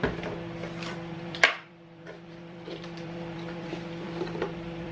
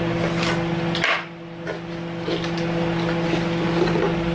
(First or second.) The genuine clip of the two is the second